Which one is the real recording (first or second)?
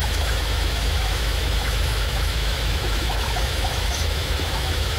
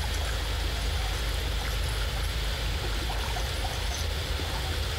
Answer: second